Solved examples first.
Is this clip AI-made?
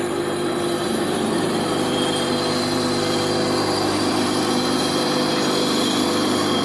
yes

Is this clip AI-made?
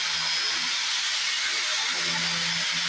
no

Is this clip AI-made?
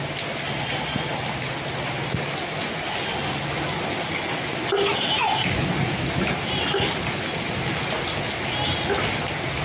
no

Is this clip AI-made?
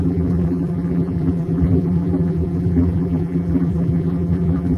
yes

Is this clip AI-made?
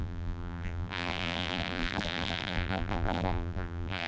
yes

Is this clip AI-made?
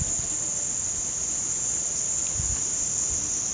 no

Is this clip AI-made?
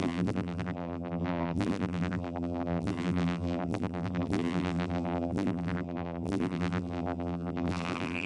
yes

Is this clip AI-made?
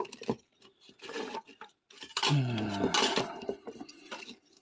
no